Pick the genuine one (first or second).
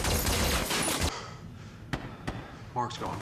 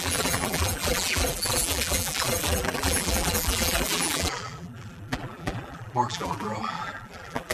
first